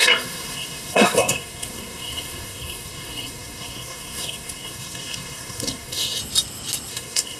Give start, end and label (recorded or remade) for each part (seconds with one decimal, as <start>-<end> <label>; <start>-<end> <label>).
0.0-6.2 remade; 6.2-6.9 recorded; 6.9-7.4 remade